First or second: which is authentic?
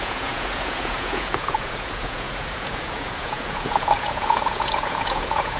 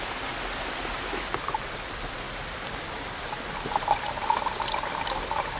second